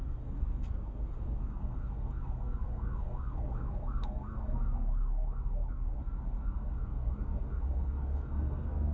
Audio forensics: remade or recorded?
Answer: remade